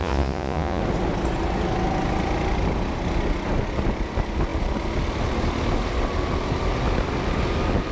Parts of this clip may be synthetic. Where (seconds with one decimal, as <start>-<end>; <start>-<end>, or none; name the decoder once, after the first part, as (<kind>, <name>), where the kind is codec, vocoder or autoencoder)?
0.0-0.8 (vocoder, Vocos)